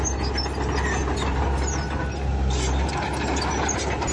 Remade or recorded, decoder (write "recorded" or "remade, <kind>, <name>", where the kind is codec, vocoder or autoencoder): recorded